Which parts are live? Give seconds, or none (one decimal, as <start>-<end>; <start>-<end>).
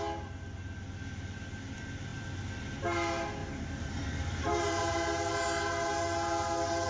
0.0-3.4; 5.3-6.9